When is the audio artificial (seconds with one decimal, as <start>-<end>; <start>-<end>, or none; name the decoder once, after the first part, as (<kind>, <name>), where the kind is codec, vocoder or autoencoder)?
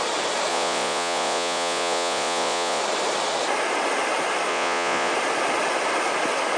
0.5-2.8 (vocoder, Vocos); 4.5-5.1